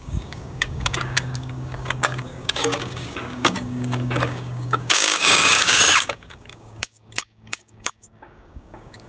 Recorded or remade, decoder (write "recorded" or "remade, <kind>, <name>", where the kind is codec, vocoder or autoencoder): remade, codec, DAC